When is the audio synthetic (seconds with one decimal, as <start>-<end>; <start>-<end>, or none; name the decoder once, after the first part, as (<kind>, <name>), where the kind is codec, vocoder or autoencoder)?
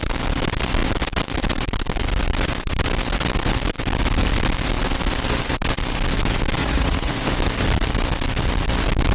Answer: 6.6-7.2 (vocoder, Vocos)